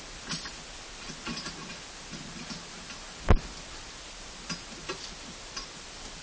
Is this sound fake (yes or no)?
no